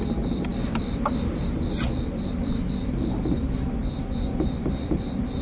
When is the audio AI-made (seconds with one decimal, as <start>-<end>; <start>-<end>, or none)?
none